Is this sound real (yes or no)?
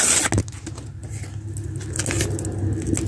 yes